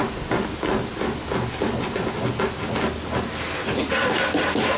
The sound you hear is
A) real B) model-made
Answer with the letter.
A